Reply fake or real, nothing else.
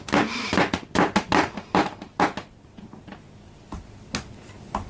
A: real